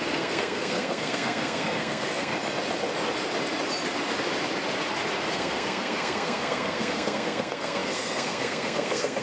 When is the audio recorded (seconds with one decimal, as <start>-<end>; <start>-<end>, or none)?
2.3-5.3